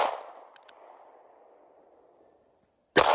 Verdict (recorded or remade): recorded